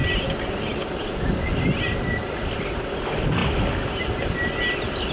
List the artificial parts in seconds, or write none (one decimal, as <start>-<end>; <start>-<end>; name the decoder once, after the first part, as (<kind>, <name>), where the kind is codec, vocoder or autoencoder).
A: none